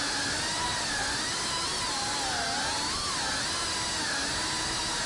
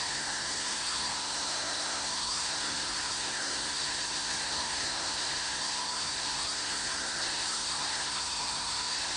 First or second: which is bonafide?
first